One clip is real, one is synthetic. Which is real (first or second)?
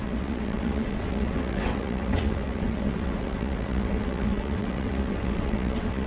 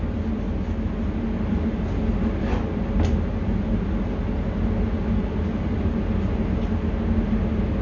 second